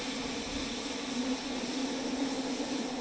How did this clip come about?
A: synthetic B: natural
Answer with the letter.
A